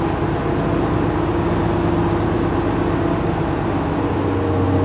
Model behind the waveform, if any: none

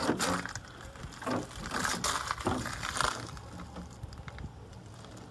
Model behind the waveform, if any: none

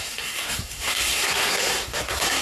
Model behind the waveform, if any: codec, SNAC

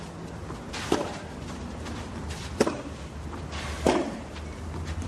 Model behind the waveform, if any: none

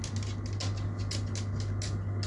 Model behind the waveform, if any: none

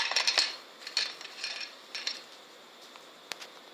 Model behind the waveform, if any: none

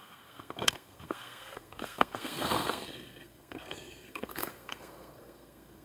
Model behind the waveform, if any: codec, SNAC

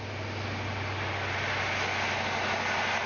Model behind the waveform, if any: none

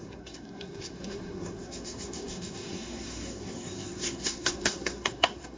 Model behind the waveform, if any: codec, SNAC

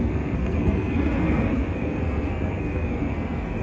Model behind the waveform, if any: codec, SNAC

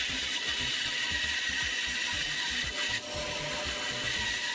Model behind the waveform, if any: none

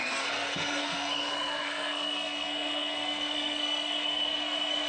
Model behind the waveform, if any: codec, SNAC